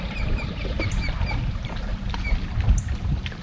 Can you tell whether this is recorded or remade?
remade